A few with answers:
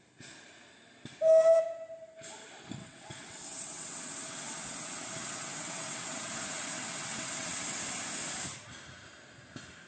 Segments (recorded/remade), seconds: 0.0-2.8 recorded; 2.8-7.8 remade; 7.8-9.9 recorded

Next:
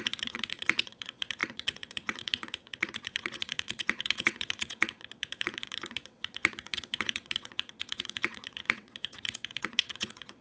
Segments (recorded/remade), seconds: 0.0-10.4 remade